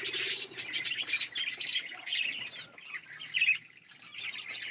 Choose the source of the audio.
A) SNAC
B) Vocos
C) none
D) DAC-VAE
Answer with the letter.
C